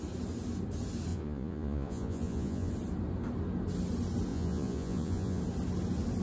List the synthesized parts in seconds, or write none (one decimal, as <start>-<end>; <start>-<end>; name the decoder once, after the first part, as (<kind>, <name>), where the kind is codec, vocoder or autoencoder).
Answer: 1.1-2.7 (vocoder, Vocos); 4.3-5.4